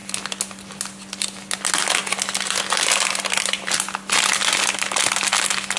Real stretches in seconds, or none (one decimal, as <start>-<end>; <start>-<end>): 0.0-5.8